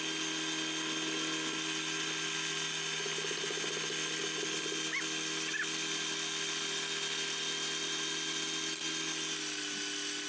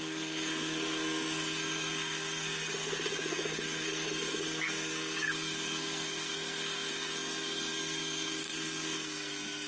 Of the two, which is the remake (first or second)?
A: second